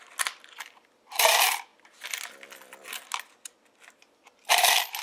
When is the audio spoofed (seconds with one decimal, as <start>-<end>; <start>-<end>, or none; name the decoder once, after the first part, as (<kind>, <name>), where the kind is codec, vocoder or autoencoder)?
none